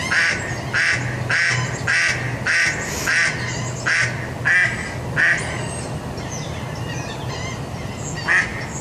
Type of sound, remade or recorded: recorded